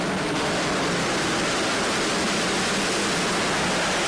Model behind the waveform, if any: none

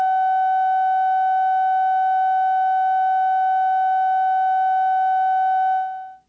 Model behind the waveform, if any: none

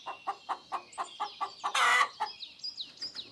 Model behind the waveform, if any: none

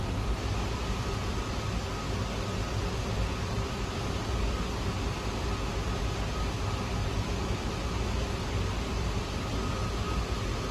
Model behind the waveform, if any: none